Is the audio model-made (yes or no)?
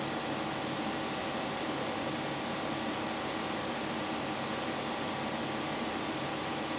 no